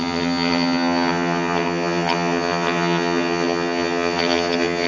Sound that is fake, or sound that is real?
fake